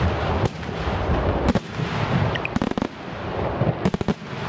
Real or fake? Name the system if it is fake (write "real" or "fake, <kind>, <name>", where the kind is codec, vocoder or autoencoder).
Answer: real